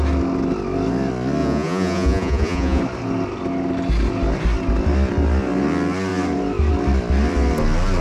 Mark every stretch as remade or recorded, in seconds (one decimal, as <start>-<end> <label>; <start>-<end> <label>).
0.0-1.4 recorded; 1.4-2.8 remade; 2.8-8.0 recorded